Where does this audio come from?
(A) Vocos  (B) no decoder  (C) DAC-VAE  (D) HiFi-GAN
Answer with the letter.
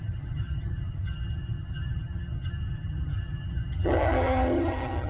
D